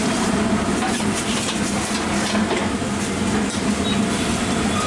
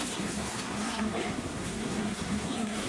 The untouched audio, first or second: first